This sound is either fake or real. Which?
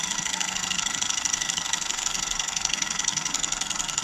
fake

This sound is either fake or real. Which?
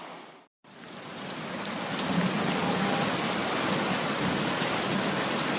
real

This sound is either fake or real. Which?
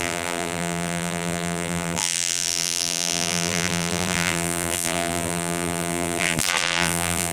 fake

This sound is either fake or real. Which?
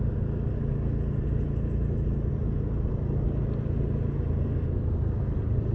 real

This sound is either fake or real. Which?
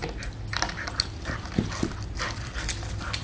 real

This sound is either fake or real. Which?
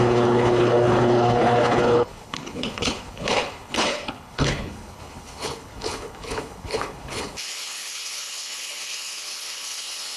fake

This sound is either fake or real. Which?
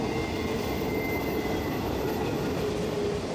real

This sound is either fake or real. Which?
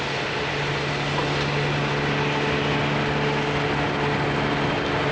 real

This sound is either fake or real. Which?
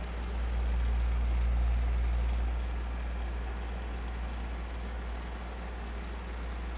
real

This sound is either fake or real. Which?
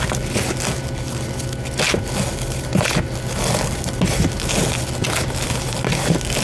real